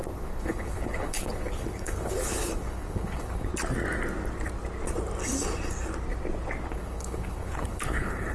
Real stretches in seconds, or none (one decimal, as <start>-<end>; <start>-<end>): 3.5-6.7